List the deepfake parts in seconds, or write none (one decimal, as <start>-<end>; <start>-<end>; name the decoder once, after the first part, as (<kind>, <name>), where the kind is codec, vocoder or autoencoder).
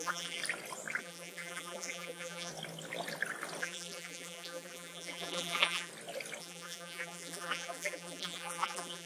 0.0-0.4 (vocoder, BigVGAN v2); 1.0-2.5; 3.6-5.9; 6.4-9.1